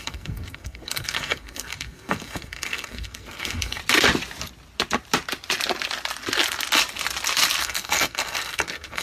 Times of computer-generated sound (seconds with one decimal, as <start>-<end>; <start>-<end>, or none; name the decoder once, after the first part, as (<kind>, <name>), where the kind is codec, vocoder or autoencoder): 0.0-3.8 (codec, SNAC); 7.6-9.0

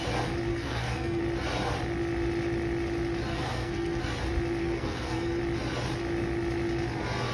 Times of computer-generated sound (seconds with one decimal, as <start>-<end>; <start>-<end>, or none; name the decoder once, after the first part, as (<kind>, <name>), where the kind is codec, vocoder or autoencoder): 0.5-1.2 (codec, SNAC); 3.3-4.0; 4.6-5.4

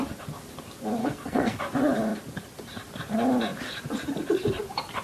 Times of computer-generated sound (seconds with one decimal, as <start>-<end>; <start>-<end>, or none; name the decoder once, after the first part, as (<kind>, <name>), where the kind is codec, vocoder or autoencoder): 1.0-1.6 (codec, SNAC)

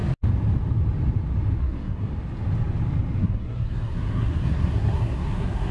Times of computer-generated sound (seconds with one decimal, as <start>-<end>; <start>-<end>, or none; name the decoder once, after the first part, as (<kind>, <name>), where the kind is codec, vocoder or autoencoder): 1.6-2.1 (codec, SNAC); 3.2-5.7

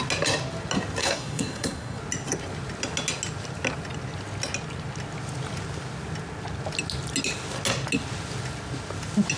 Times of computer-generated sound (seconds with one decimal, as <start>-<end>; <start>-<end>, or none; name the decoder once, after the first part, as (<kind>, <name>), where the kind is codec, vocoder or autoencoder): 1.0-2.0 (codec, SNAC)